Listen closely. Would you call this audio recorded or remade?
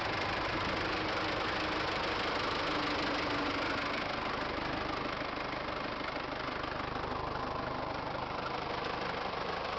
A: recorded